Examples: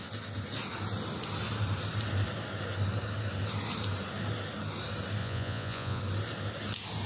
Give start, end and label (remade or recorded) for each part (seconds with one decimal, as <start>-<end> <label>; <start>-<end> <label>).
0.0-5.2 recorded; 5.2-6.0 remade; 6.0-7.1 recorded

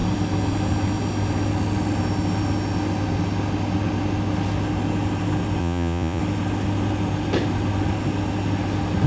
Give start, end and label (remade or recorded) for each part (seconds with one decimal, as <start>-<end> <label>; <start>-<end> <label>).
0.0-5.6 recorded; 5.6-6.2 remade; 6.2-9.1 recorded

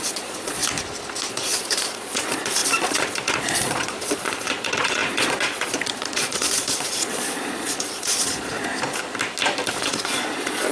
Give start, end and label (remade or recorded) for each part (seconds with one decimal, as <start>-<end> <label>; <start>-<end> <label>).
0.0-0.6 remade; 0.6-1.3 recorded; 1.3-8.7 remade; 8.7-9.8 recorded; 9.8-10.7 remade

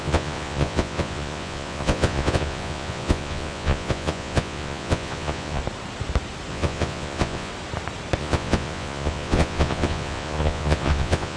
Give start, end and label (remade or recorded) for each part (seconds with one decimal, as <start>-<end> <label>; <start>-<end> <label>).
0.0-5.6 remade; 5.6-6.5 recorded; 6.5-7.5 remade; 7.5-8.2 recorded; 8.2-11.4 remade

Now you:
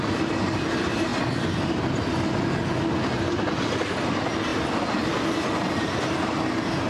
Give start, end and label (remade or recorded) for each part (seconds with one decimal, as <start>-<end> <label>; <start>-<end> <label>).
0.0-6.9 recorded

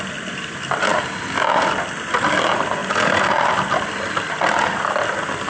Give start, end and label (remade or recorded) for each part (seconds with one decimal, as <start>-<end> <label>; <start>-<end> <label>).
0.0-5.5 recorded

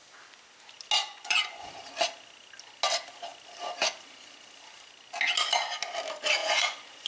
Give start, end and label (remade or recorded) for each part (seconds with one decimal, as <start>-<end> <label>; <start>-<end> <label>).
0.0-1.0 recorded; 1.0-1.7 remade; 1.7-6.4 recorded; 6.4-7.1 remade